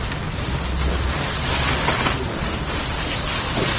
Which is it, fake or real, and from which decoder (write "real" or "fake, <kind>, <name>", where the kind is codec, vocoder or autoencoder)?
real